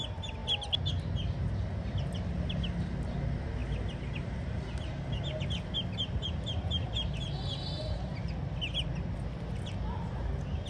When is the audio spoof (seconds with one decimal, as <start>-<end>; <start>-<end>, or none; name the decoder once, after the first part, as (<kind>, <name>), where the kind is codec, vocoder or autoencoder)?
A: none